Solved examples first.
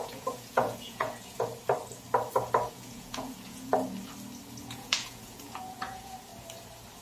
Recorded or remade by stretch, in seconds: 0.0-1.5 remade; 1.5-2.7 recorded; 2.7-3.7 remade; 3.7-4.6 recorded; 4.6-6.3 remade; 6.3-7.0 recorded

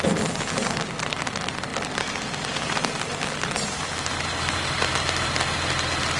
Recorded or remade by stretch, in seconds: 0.0-6.2 recorded

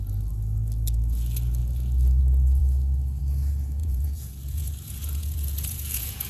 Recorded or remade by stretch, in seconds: 0.0-3.8 recorded; 3.8-6.3 remade

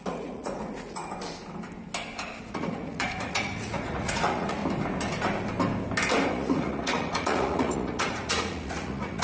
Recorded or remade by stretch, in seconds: 0.0-1.0 remade; 1.0-2.4 recorded; 2.4-4.6 remade; 4.6-6.3 recorded; 6.3-9.2 remade

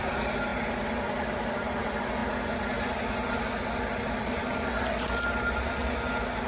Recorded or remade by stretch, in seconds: 0.0-6.5 recorded

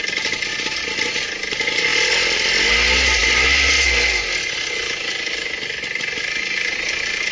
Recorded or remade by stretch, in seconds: 0.0-7.3 recorded